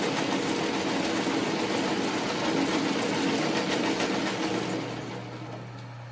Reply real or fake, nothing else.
real